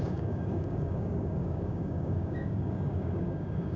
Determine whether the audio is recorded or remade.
remade